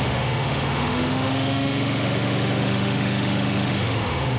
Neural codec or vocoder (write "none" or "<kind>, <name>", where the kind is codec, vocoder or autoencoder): autoencoder, DAC-VAE